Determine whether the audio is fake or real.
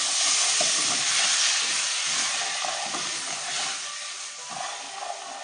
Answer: real